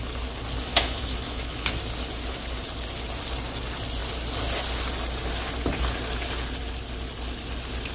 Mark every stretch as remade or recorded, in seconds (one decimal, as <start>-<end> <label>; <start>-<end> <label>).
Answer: 0.0-0.7 recorded; 0.7-1.7 remade; 1.7-7.9 recorded

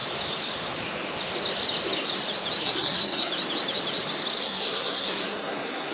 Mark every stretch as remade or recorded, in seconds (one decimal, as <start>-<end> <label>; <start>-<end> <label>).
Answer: 0.0-2.6 recorded; 2.6-3.3 remade; 3.3-4.4 recorded; 4.4-5.9 remade

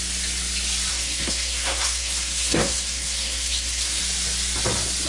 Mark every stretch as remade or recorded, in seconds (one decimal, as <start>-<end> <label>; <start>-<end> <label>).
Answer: 0.0-0.9 recorded; 0.9-4.0 remade; 4.0-5.1 recorded

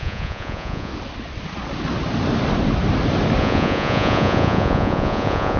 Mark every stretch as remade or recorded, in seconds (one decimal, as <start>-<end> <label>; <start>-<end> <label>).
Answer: 0.0-0.9 remade; 0.9-3.4 recorded; 3.4-5.6 remade

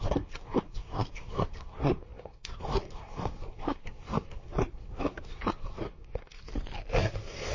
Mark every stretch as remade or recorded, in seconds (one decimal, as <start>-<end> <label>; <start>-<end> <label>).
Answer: 0.0-6.5 remade; 6.5-7.0 recorded; 7.0-7.5 remade